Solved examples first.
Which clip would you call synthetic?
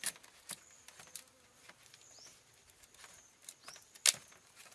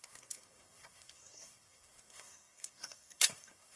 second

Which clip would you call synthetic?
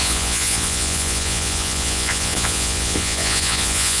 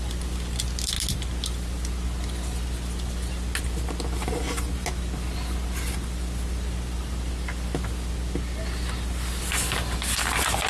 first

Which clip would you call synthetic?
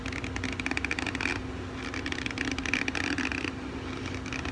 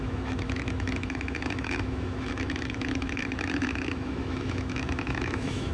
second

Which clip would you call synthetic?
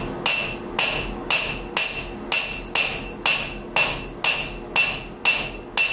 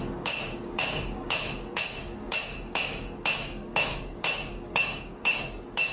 second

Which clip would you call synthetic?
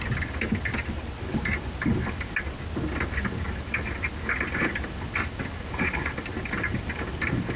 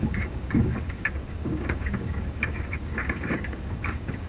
second